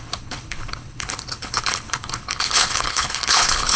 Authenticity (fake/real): fake